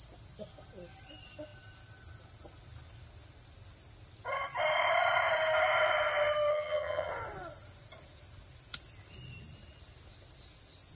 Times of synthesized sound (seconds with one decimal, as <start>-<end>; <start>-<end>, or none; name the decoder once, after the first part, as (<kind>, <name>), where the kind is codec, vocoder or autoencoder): 6.5-7.1 (vocoder, HiFi-GAN)